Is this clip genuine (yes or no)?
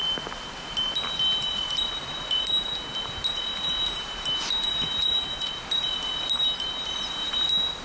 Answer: yes